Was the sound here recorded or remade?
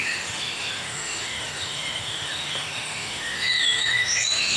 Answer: remade